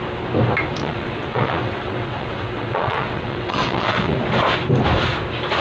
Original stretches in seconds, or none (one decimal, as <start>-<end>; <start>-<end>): 0.0-0.8; 4.2-5.6